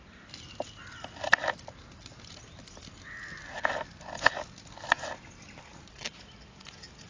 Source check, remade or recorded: recorded